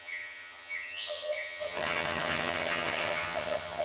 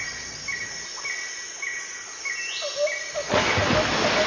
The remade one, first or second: first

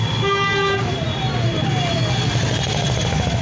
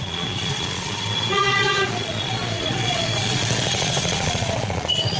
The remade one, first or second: second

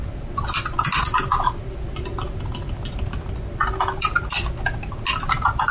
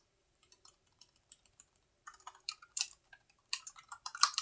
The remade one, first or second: second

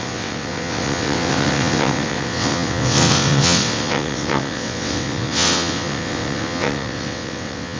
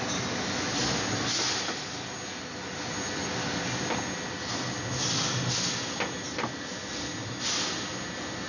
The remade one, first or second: first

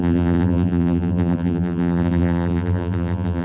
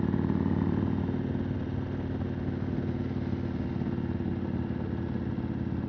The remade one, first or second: first